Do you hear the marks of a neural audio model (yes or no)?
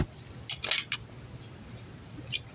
no